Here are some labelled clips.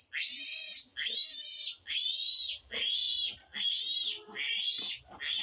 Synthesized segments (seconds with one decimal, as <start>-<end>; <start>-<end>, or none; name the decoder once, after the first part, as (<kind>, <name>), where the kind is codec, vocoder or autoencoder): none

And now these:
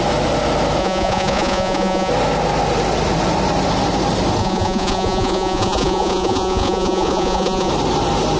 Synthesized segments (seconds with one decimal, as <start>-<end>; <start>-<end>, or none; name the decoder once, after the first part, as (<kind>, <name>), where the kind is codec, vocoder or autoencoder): 0.8-2.1 (vocoder, Vocos); 4.4-7.7

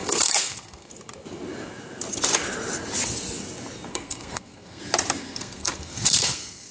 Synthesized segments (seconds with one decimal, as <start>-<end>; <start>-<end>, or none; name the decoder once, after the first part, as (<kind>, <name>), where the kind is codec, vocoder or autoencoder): 0.0-0.9 (codec, SNAC); 3.9-4.8; 5.2-6.7

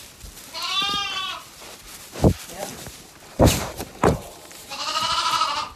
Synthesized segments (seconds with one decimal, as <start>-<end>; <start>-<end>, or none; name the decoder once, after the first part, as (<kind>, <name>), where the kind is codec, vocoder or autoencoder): 2.7-5.1 (vocoder, BigVGAN v2)

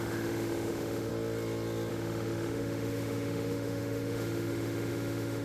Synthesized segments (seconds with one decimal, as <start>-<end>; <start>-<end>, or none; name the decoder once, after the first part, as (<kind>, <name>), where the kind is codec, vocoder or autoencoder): 0.0-1.1 (autoencoder, DAC-VAE); 1.9-5.4

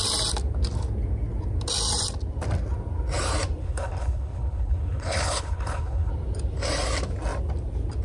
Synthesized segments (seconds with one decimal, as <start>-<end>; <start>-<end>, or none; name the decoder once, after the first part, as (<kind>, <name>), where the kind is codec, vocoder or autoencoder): 3.6-6.1 (codec, HILCodec)

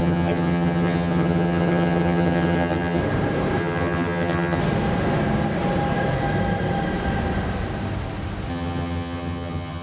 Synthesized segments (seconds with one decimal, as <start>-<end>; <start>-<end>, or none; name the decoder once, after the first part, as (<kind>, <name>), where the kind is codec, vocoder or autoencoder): 0.0-3.0 (vocoder, HiFi-GAN); 3.6-4.6; 8.5-9.8

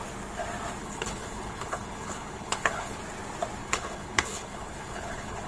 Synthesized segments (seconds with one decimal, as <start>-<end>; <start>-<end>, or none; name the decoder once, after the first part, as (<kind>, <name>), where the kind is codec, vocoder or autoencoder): 0.8-3.0 (codec, HILCodec); 3.6-5.5